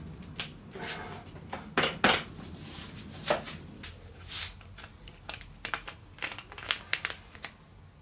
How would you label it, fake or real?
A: real